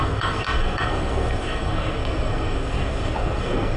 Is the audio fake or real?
fake